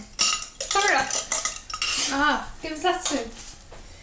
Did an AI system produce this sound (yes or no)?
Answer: no